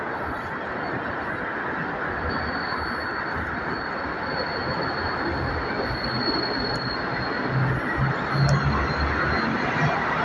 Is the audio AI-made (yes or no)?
no